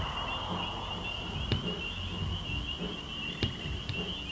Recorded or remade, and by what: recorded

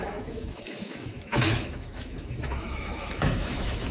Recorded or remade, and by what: remade, autoencoder, DAC-VAE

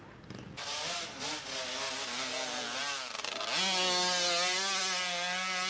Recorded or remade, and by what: recorded